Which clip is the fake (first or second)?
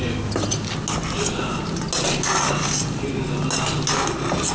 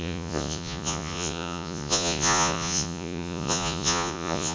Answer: second